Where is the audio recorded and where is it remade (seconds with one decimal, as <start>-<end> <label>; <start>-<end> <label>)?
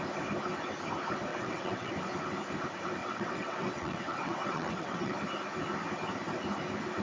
0.0-1.3 recorded; 1.3-1.9 remade; 1.9-3.0 recorded; 3.0-5.1 remade; 5.1-7.0 recorded